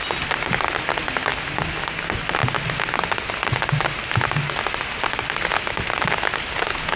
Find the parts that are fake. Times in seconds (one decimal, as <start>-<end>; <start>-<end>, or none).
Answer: none